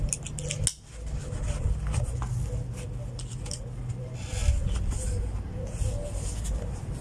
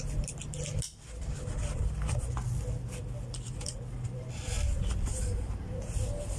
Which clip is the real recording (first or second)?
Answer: first